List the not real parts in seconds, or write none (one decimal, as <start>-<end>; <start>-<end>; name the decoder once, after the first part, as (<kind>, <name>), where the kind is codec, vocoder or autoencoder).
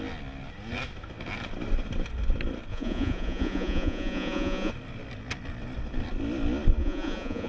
2.7-4.7 (vocoder, Vocos); 6.8-7.5